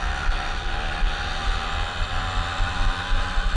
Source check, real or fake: real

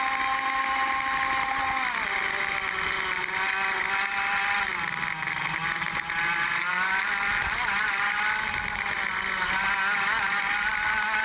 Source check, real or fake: real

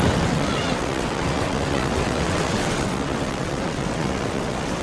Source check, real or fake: fake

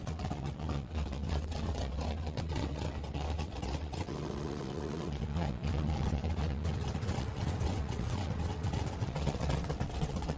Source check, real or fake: fake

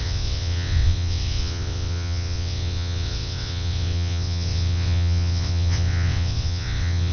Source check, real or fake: fake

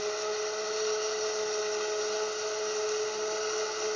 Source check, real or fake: real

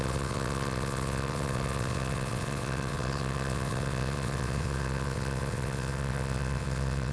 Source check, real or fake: fake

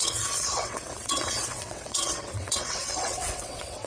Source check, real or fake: fake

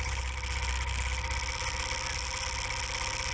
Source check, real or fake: real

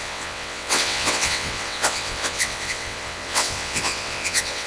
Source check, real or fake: fake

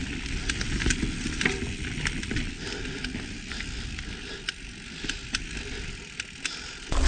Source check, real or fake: real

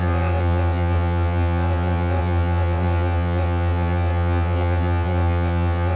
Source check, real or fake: fake